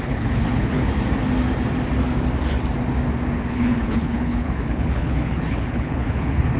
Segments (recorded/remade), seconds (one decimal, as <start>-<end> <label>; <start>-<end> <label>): 0.0-0.9 remade; 0.9-3.5 recorded; 3.5-6.6 remade